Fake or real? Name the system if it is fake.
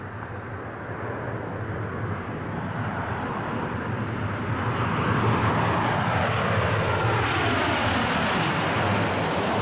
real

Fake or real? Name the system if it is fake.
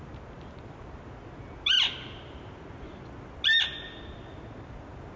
real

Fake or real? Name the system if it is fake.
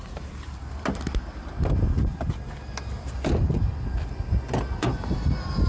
real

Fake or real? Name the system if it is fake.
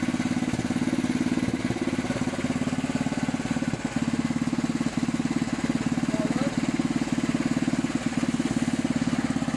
real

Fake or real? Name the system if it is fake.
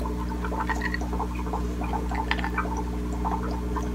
real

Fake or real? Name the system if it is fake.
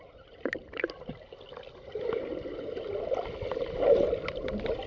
real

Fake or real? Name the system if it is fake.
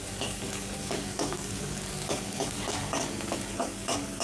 fake, codec, DAC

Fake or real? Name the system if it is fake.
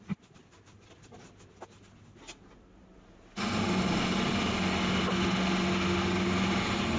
real